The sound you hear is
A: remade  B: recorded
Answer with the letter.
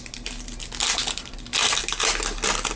B